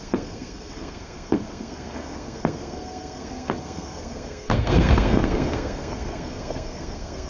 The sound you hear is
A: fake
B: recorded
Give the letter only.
A